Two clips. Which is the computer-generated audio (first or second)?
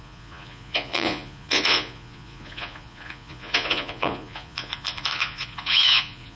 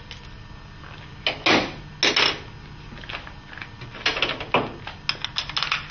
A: first